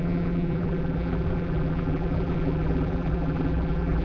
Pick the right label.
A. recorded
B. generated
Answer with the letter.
B